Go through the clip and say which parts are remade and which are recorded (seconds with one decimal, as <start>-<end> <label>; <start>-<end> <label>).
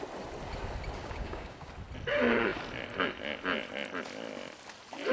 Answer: 0.0-1.0 recorded; 1.0-1.7 remade; 1.7-5.1 recorded